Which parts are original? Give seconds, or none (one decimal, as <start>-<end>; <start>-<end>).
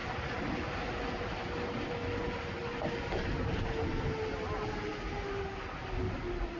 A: 0.5-6.6